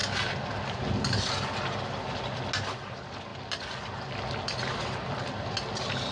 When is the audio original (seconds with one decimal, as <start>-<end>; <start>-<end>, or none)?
0.0-6.1